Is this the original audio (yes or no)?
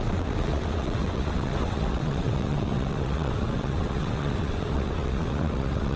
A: no